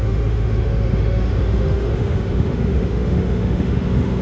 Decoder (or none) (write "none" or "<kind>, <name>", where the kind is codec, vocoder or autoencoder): autoencoder, DAC-VAE